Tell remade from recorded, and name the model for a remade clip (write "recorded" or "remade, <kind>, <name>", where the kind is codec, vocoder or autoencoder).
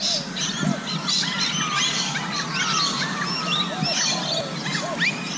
recorded